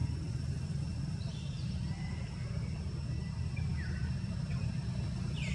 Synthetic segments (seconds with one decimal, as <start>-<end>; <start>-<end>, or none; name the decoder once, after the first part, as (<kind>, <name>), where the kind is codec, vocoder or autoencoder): 0.0-3.3 (vocoder, BigVGAN v2); 4.0-4.7